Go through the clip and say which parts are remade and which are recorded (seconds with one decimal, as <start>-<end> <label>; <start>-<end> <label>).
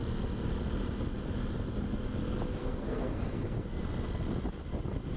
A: 0.0-2.6 recorded; 2.6-3.8 remade; 3.8-5.2 recorded